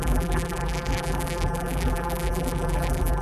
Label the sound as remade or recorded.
remade